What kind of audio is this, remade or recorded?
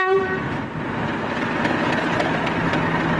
remade